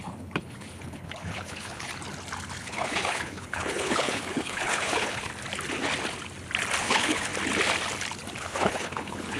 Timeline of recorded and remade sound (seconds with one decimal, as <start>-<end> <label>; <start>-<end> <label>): 0.0-1.9 remade; 1.9-2.6 recorded; 2.6-5.3 remade; 5.3-6.8 recorded; 6.8-7.3 remade; 7.3-8.4 recorded; 8.4-9.4 remade